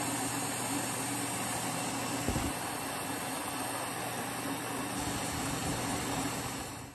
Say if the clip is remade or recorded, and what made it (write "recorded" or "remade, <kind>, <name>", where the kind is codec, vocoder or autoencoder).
recorded